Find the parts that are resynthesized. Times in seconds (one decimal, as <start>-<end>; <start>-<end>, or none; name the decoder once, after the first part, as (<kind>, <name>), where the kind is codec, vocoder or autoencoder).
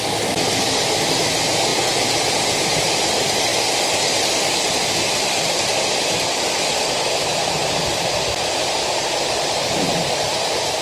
1.7-2.8 (vocoder, Vocos)